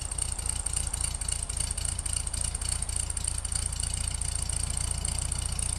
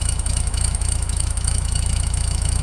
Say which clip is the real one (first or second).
first